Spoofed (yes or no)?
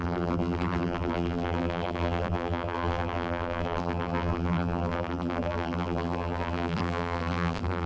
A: yes